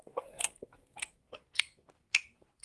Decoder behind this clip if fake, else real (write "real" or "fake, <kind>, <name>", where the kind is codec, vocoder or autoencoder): fake, codec, SNAC